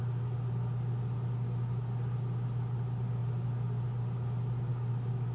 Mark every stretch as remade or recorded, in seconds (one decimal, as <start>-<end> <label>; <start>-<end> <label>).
0.0-5.3 recorded